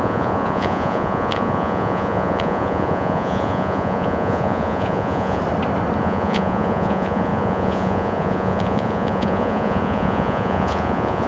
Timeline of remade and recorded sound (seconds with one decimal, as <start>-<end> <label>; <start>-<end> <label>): 0.0-5.4 remade; 5.4-6.0 recorded; 6.0-11.3 remade